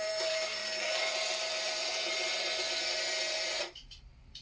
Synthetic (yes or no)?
yes